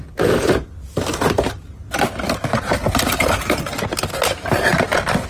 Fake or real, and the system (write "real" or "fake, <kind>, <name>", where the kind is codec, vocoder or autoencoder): real